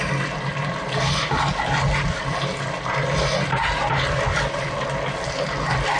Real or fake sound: real